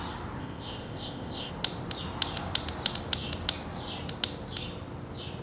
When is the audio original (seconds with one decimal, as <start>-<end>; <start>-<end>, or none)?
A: 0.0-0.4; 1.5-5.4